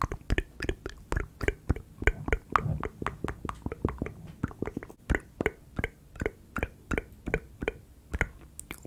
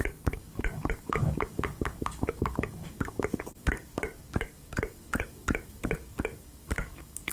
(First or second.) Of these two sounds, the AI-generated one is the second